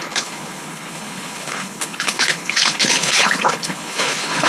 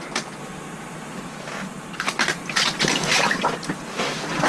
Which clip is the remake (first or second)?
first